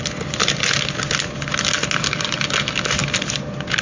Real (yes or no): yes